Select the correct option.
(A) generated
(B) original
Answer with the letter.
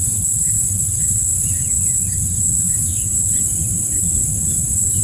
A